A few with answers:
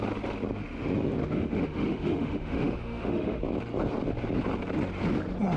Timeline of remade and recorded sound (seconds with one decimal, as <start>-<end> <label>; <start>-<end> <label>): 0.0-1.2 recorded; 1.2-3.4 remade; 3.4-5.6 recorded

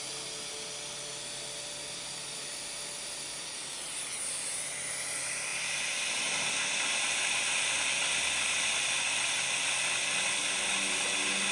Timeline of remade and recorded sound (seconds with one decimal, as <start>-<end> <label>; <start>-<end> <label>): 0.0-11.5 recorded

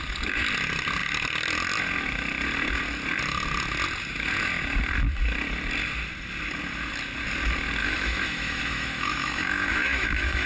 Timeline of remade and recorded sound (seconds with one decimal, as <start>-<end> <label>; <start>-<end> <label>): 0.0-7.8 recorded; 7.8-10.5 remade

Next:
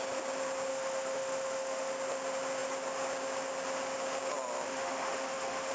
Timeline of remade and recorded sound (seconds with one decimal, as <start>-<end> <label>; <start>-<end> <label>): 0.0-0.7 recorded; 0.7-1.9 remade; 1.9-4.7 recorded; 4.7-5.7 remade